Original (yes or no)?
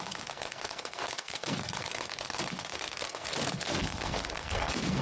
no